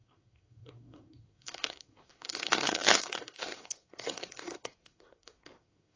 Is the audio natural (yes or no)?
no